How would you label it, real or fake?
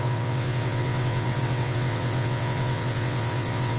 fake